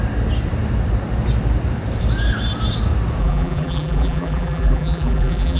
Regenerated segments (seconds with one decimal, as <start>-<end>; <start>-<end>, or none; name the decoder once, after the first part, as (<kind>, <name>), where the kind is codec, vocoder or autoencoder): 3.2-5.6 (vocoder, BigVGAN v2)